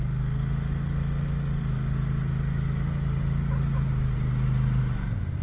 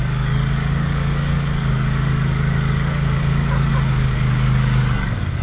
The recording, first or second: first